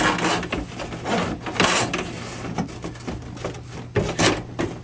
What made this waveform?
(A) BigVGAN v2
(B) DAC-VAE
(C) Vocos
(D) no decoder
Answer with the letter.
D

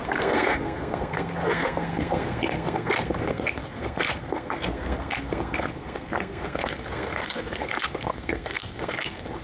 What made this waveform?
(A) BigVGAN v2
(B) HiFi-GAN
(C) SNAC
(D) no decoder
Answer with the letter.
C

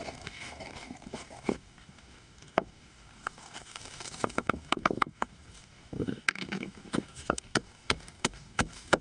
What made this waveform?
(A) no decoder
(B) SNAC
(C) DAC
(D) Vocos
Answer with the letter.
C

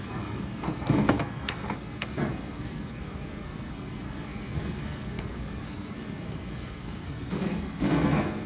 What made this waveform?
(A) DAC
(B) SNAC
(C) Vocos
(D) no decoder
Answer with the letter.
B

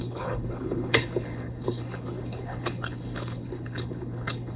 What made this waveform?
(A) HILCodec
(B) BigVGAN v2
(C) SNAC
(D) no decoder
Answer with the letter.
A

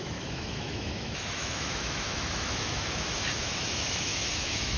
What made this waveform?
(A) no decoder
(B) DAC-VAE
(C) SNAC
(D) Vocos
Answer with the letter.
B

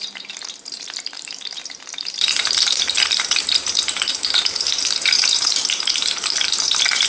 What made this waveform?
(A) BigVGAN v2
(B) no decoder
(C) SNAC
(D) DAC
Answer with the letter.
A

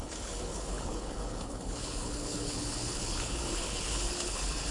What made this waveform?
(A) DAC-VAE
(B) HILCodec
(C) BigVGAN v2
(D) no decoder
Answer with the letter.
B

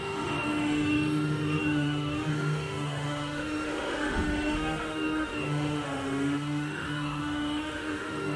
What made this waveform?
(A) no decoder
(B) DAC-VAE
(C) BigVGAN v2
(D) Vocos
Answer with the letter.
B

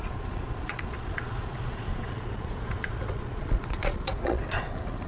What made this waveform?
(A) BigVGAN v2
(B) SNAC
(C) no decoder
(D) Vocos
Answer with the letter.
D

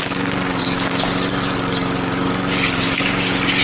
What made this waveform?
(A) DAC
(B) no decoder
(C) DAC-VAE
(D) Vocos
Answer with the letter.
A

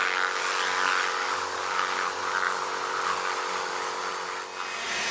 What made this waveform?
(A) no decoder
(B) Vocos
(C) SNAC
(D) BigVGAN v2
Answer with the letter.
A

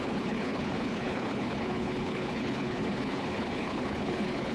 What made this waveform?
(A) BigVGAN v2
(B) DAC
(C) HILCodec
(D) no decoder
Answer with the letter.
C